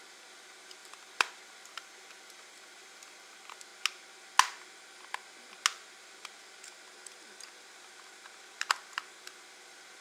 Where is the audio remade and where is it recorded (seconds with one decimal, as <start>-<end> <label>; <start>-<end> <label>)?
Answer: 0.0-3.7 remade; 3.7-8.4 recorded; 8.4-10.0 remade